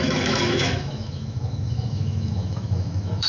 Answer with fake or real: fake